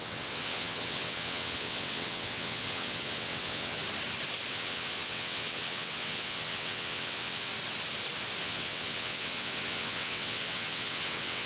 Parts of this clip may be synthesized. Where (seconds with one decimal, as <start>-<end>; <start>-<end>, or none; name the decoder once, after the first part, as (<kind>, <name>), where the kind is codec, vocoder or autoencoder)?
0.0-3.8 (vocoder, WaveNeXt); 4.5-7.5; 8.4-11.5